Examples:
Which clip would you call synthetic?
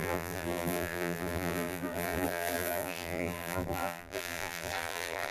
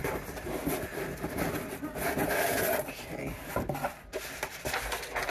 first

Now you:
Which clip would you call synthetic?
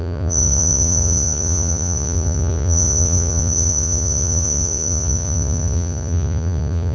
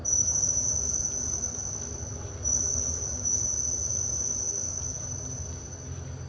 first